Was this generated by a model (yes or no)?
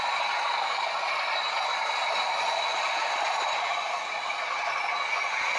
no